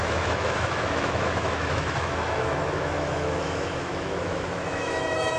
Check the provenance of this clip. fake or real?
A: fake